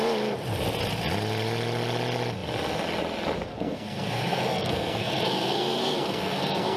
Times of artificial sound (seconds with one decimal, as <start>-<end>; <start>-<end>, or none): 3.5-6.8